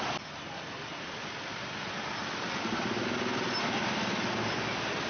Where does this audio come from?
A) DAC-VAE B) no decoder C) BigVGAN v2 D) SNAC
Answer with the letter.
B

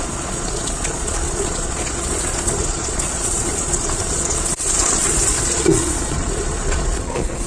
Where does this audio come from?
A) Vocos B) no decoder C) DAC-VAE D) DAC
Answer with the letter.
A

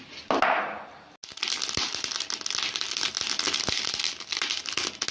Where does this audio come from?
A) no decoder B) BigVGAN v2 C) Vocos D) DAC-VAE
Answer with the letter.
A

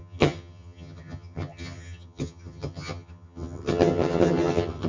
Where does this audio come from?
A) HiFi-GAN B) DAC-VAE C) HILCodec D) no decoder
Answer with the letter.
A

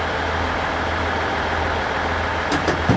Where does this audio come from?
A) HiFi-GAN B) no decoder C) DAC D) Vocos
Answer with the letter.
B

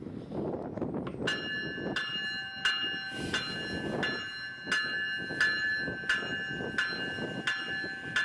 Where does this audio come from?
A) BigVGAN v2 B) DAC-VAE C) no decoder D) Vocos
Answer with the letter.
C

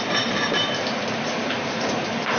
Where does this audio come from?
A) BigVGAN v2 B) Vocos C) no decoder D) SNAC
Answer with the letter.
A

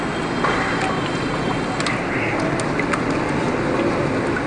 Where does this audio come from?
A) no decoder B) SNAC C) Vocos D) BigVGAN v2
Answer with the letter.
A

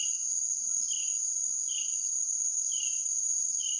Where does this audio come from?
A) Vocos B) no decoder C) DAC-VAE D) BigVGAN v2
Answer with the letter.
B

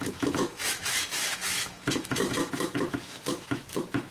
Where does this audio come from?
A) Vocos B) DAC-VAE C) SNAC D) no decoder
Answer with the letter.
B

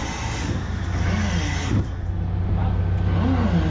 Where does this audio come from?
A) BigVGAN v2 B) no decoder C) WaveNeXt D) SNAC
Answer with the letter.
B